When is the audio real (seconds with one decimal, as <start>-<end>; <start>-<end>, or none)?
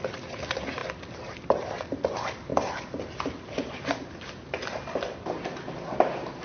0.0-6.4